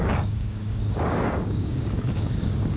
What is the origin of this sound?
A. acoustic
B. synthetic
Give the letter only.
B